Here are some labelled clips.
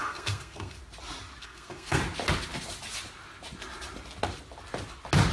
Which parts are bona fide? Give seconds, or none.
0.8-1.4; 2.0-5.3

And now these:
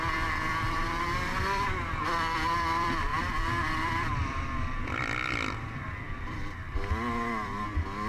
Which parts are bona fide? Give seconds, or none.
none

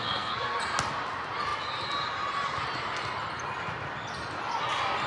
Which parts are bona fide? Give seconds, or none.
0.6-5.1

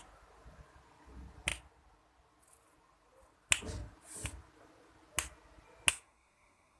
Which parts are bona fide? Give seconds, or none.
0.0-5.9

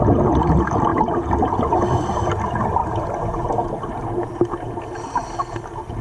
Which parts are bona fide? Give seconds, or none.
0.9-1.4; 2.8-6.0

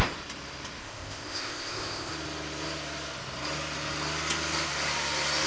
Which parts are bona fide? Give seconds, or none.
0.0-0.8; 2.1-5.5